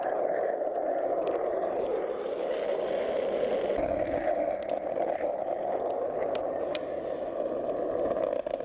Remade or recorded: recorded